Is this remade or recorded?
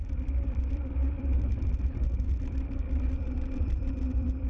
remade